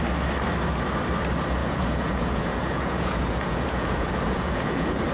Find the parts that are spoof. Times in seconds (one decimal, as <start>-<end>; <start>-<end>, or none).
1.6-5.1